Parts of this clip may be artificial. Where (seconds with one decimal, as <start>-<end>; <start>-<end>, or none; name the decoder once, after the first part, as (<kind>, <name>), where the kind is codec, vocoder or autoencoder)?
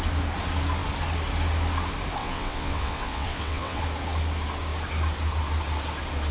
2.2-3.8 (vocoder, WaveNeXt)